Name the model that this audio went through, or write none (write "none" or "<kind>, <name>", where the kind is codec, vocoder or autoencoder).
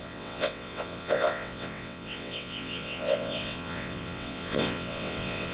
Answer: vocoder, WaveNeXt